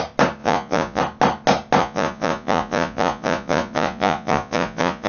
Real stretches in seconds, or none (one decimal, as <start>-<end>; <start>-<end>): 0.0-0.4; 1.0-1.8